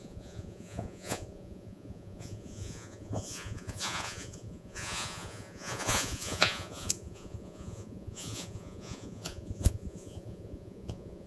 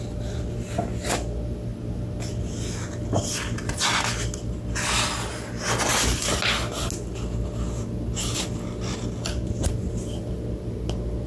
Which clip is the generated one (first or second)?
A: first